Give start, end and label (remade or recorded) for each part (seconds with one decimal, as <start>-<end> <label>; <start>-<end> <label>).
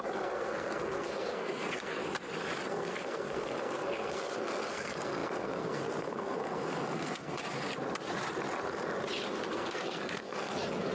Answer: 0.0-2.0 remade; 2.0-2.7 recorded; 2.7-7.4 remade; 7.4-9.5 recorded; 9.5-10.9 remade